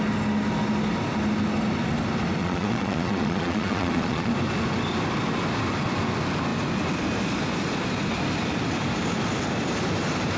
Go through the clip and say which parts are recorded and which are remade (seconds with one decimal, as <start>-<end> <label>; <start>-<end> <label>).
0.0-2.4 recorded; 2.4-4.3 remade; 4.3-10.4 recorded